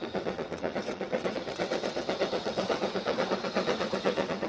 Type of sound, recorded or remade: remade